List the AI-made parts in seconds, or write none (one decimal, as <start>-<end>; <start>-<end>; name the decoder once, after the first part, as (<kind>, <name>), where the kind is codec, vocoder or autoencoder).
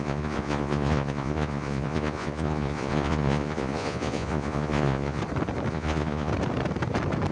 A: 0.0-5.2 (vocoder, Vocos); 5.7-6.3